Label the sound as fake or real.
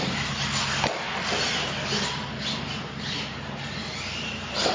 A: real